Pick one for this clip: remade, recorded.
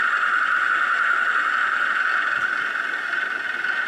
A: recorded